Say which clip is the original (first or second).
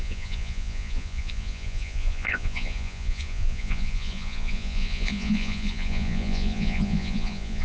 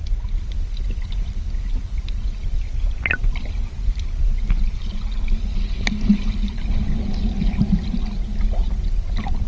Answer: second